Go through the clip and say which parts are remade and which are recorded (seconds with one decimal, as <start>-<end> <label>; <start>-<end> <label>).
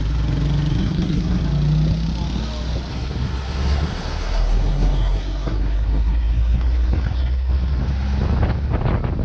0.0-0.7 recorded; 0.7-1.4 remade; 1.4-2.9 recorded; 2.9-7.8 remade; 7.8-9.2 recorded